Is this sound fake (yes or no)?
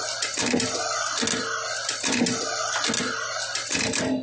no